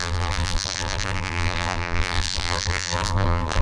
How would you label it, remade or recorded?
remade